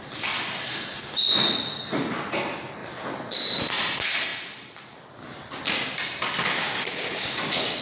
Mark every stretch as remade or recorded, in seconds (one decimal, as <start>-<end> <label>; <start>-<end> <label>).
0.0-7.8 recorded